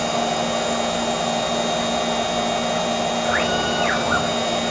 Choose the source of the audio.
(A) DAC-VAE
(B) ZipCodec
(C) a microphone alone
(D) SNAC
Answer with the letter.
C